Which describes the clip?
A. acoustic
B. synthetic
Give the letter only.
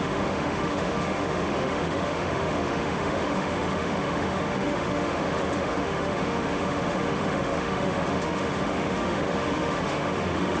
B